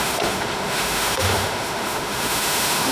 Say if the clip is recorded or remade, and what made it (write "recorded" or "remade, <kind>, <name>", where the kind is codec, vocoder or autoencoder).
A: remade, autoencoder, DAC-VAE